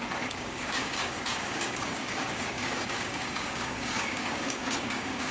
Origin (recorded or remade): remade